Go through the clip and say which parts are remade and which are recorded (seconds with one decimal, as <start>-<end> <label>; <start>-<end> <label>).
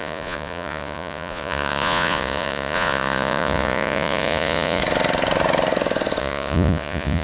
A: 0.0-4.8 remade; 4.8-6.2 recorded; 6.2-7.2 remade